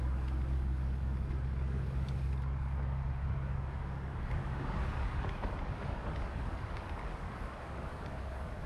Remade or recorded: remade